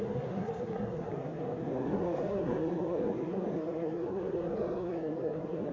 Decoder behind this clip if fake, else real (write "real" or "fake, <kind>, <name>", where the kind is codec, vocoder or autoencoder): fake, codec, SNAC